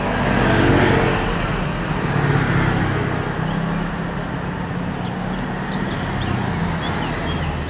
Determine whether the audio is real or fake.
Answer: real